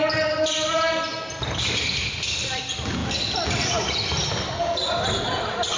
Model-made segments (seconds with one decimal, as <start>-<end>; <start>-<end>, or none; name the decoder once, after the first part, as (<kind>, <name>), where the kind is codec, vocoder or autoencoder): none